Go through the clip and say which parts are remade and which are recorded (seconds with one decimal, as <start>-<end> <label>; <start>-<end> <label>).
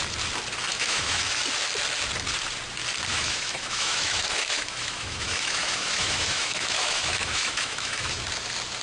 0.0-0.7 recorded; 0.7-1.2 remade; 1.2-3.1 recorded; 3.1-8.2 remade; 8.2-8.8 recorded